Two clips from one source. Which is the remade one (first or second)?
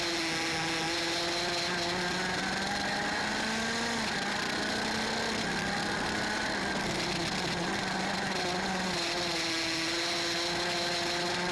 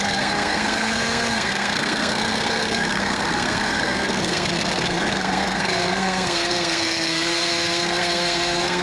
second